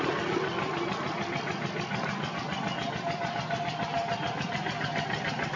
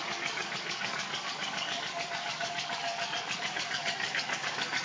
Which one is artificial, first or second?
second